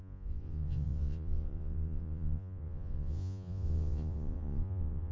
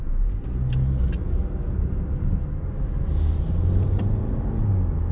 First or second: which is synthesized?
first